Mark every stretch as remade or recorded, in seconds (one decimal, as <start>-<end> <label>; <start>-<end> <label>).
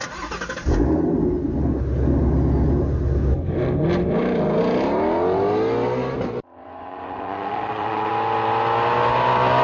0.0-6.6 recorded; 6.6-8.1 remade; 8.1-9.6 recorded